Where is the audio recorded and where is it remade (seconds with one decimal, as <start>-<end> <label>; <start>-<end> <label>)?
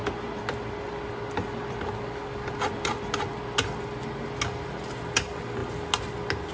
0.0-6.5 recorded